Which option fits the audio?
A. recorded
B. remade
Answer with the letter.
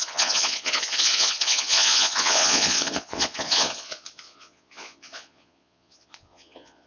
B